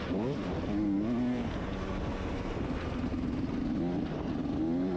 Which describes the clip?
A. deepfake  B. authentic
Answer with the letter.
B